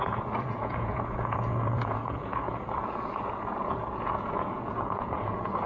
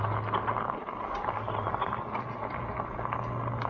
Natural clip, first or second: second